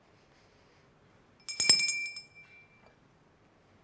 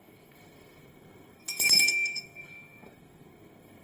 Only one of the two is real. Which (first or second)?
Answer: first